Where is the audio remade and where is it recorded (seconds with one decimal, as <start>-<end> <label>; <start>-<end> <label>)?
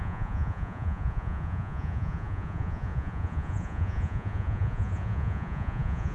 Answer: 0.0-6.1 remade